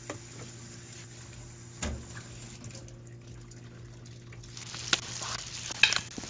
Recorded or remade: recorded